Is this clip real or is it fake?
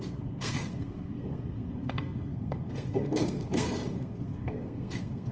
fake